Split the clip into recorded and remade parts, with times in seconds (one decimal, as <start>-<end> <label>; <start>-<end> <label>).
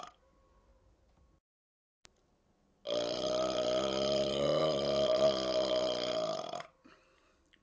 0.0-7.6 recorded